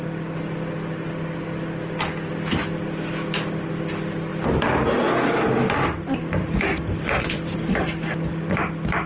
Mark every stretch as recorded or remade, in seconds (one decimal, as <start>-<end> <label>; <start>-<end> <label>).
0.0-9.1 recorded